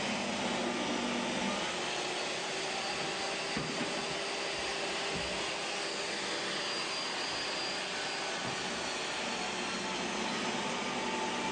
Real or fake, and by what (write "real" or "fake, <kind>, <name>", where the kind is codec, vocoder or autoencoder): real